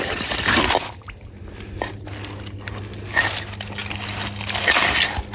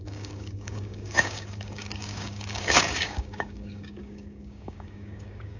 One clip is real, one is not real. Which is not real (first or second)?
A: second